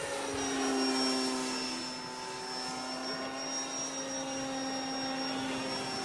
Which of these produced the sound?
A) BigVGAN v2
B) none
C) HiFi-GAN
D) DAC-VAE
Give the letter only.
B